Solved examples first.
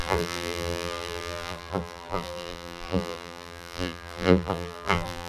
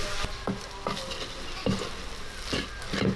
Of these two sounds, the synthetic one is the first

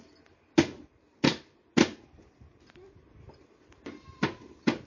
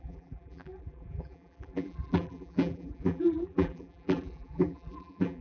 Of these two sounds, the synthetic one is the second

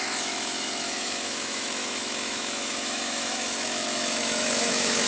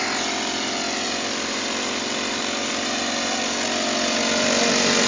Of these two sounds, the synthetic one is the first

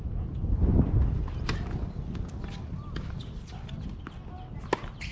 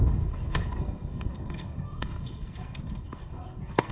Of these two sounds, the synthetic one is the second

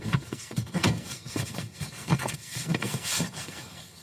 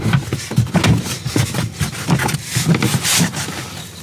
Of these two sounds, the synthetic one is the first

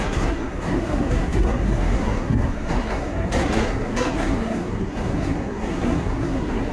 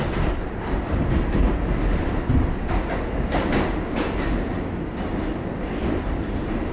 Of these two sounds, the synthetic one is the first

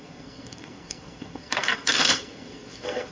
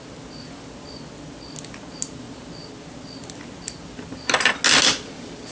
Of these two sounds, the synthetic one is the first